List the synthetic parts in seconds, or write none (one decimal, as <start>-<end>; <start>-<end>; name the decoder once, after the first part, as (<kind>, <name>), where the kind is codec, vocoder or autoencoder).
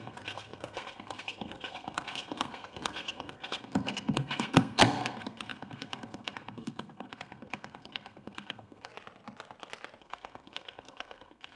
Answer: 0.0-8.9 (codec, SNAC); 10.0-11.6